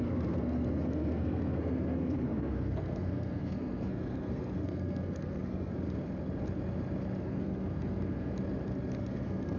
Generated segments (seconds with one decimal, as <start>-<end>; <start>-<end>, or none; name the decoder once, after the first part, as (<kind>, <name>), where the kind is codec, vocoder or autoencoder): 0.0-5.7 (codec, SNAC); 7.2-8.3; 9.0-9.6